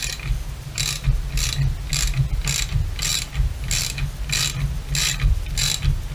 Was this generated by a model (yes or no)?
no